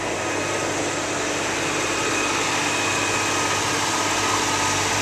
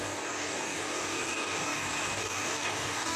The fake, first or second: second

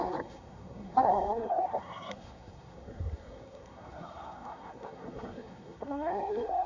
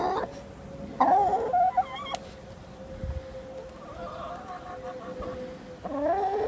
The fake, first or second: first